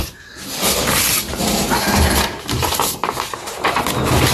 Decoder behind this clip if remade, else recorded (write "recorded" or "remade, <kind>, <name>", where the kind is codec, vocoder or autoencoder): recorded